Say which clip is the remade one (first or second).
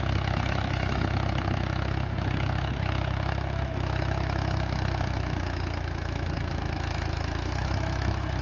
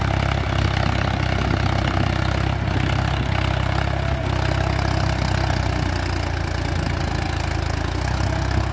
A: first